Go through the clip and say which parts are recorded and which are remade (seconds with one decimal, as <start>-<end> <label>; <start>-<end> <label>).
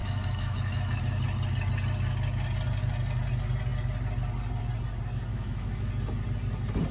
0.0-1.0 remade; 1.0-5.3 recorded; 5.3-5.9 remade; 5.9-6.9 recorded